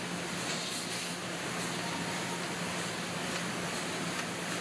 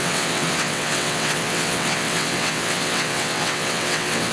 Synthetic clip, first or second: second